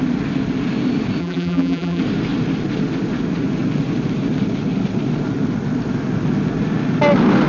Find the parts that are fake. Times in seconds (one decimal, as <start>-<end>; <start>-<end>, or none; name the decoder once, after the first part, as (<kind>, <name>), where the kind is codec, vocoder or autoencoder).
1.2-2.0 (vocoder, BigVGAN v2)